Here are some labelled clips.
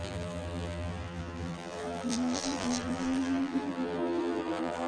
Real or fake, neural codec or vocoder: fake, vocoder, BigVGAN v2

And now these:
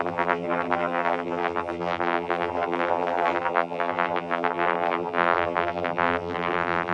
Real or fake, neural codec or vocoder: fake, vocoder, BigVGAN v2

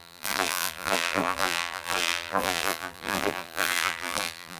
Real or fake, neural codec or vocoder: fake, vocoder, BigVGAN v2